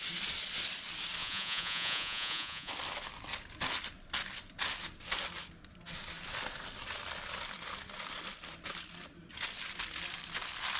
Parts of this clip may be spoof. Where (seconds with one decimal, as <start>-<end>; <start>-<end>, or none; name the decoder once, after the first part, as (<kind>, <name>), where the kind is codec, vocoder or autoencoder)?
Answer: 1.2-2.7 (vocoder, Vocos)